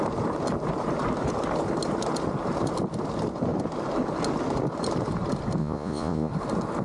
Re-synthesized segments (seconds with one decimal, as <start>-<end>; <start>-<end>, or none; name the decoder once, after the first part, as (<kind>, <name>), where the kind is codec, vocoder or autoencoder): 5.6-6.3 (vocoder, Vocos)

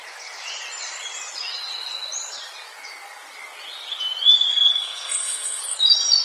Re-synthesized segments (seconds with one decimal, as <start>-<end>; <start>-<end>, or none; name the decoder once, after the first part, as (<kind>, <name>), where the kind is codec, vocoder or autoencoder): 4.5-5.6 (codec, SNAC)